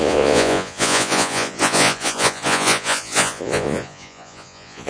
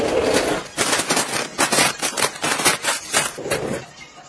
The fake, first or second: first